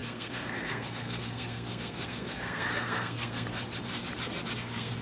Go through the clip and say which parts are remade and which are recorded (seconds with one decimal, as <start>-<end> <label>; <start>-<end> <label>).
0.0-3.5 remade; 3.5-4.6 recorded; 4.6-5.0 remade